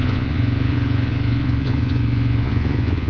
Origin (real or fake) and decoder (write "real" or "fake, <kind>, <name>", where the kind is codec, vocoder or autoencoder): fake, vocoder, Vocos